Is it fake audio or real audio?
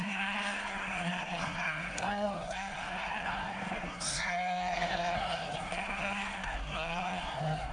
fake